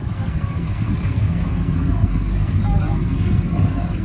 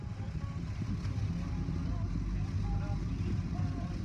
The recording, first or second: second